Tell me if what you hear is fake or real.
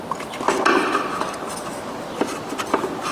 real